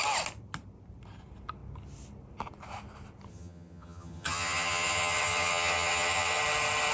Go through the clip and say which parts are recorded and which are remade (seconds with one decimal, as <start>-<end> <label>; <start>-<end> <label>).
0.0-3.3 recorded; 3.3-6.4 remade; 6.4-6.9 recorded